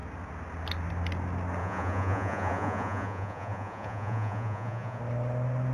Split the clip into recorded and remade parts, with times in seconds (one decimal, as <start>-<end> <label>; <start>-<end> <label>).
0.0-1.6 recorded; 1.6-5.0 remade; 5.0-5.7 recorded